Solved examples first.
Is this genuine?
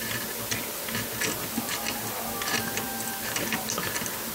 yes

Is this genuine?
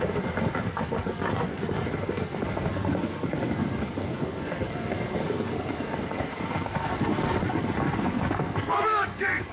no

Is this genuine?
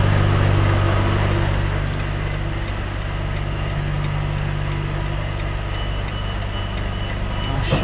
yes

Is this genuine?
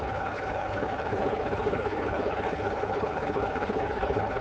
no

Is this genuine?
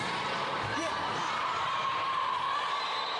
no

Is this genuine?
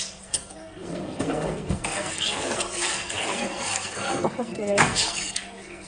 no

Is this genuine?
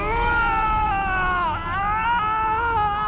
yes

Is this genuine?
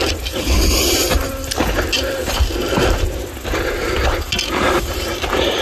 yes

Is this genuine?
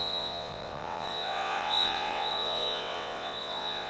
no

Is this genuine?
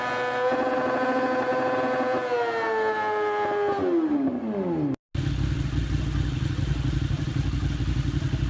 yes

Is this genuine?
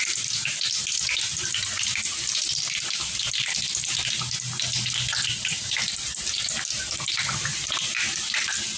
yes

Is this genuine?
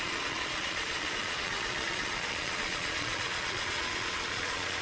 no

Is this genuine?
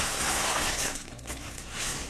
no